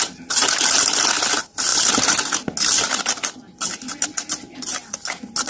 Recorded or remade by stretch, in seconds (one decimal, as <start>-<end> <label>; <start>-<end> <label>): 0.0-5.5 recorded